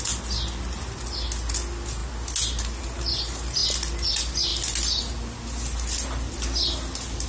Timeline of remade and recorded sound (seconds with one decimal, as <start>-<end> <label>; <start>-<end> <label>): 0.0-7.3 recorded